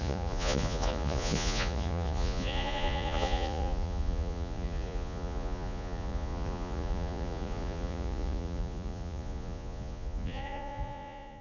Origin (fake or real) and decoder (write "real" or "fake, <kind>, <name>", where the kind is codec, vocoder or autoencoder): fake, vocoder, Vocos